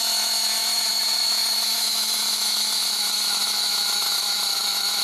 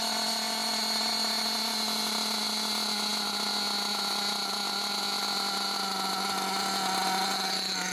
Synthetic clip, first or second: first